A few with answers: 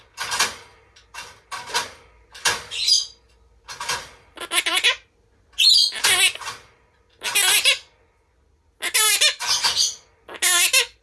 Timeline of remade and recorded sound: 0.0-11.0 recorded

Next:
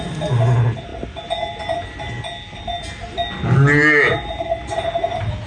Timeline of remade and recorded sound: 0.0-5.5 recorded

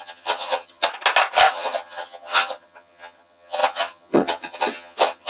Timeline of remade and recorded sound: 0.0-0.9 remade; 0.9-1.5 recorded; 1.5-5.3 remade

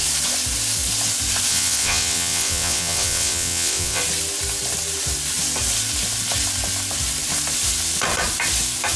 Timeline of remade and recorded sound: 0.0-1.5 recorded; 1.5-4.0 remade; 4.0-9.0 recorded

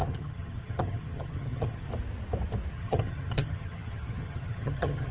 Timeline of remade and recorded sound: 0.0-1.9 remade; 1.9-2.7 recorded; 2.7-5.1 remade

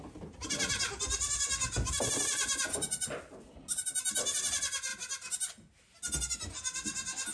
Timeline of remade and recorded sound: 0.0-7.3 recorded

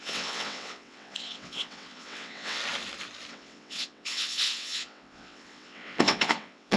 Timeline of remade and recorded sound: 0.0-2.6 remade; 2.6-3.3 recorded; 3.3-6.8 remade